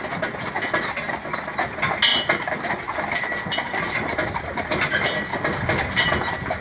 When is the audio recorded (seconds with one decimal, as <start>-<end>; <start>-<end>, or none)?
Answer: 0.0-5.3; 5.8-6.6